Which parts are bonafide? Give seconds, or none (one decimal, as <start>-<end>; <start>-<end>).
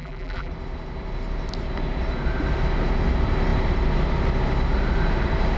0.5-5.6